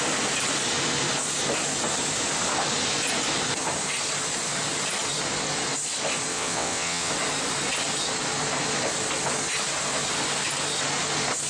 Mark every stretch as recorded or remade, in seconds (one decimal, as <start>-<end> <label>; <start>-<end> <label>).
0.0-6.3 recorded; 6.3-7.1 remade; 7.1-11.5 recorded